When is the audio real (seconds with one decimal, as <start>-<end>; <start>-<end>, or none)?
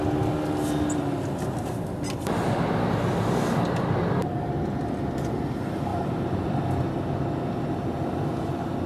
0.0-5.9; 6.8-8.9